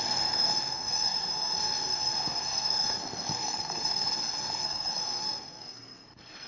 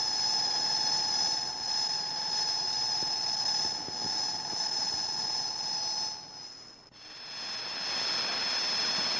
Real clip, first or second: second